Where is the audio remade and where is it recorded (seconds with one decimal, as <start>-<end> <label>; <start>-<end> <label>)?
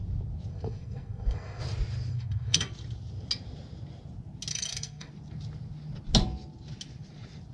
0.0-0.5 recorded; 0.5-1.6 remade; 1.6-2.1 recorded; 2.1-2.7 remade; 2.7-4.5 recorded; 4.5-5.1 remade; 5.1-7.5 recorded